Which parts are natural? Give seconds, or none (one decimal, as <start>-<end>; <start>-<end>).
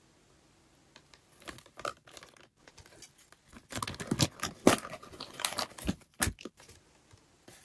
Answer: 0.0-7.6